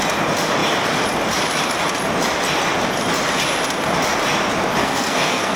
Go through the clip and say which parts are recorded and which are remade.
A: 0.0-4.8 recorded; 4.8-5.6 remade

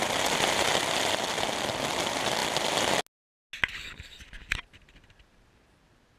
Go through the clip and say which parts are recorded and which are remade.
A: 0.0-6.2 recorded

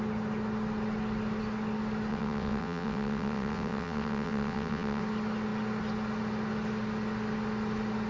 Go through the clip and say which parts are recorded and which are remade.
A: 0.0-2.1 recorded; 2.1-5.0 remade; 5.0-8.1 recorded

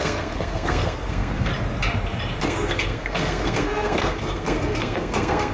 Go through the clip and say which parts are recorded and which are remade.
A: 0.0-1.5 remade; 1.5-2.4 recorded; 2.4-5.5 remade

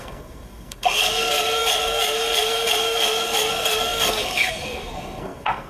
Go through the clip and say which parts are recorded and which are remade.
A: 0.0-5.7 remade

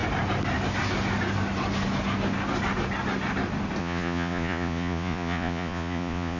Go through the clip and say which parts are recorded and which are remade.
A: 0.0-3.8 recorded; 3.8-6.4 remade